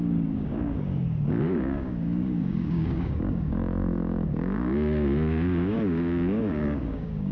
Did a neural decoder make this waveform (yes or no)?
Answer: yes